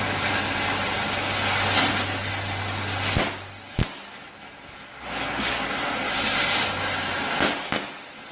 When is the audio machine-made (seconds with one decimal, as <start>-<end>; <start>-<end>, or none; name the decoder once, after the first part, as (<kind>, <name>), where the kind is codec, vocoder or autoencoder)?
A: none